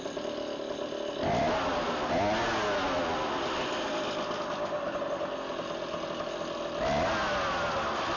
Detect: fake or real real